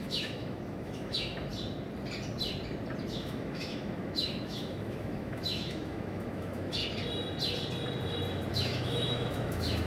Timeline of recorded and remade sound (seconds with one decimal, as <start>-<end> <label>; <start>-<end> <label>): 0.0-1.5 remade; 1.5-3.1 recorded; 3.1-6.8 remade; 6.8-8.5 recorded; 8.5-9.9 remade